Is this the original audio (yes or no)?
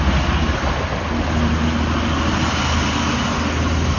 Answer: yes